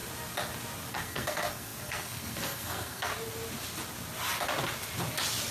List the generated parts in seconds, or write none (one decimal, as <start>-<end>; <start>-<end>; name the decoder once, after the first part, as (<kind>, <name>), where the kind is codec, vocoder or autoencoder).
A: 0.9-3.1 (codec, SNAC)